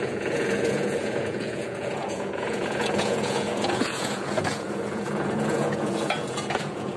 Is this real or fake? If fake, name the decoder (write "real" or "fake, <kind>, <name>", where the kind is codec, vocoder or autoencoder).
fake, vocoder, Vocos